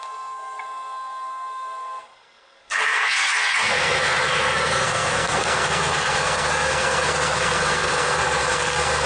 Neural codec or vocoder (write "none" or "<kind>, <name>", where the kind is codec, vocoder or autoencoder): codec, SNAC